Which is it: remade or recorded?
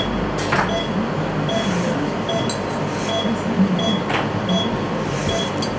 recorded